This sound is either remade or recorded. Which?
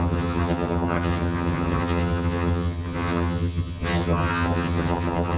remade